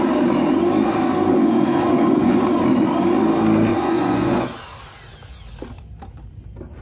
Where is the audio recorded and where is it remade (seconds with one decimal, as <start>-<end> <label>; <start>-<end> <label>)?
0.0-1.3 recorded; 1.3-2.4 remade; 2.4-3.7 recorded; 3.7-4.6 remade; 4.6-6.8 recorded